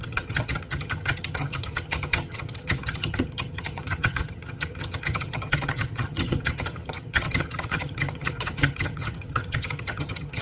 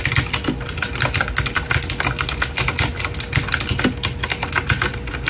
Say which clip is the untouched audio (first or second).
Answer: second